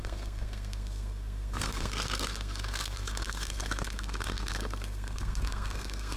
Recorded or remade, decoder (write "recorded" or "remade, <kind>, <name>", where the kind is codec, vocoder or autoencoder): remade, codec, SNAC